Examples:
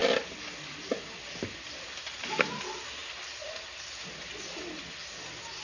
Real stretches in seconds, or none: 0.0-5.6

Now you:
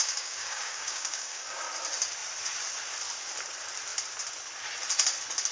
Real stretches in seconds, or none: 1.6-5.5

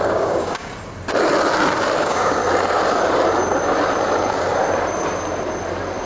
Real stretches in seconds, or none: 0.7-2.0; 2.4-6.0

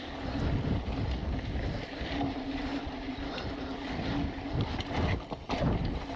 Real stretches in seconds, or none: 0.0-6.2

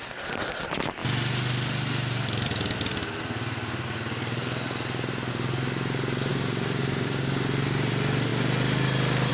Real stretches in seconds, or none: 0.0-6.3; 7.4-9.3

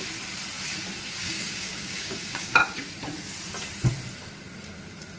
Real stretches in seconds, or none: 0.0-1.2; 2.6-5.2

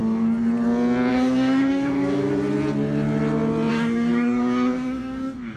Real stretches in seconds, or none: 0.0-1.1; 2.3-3.7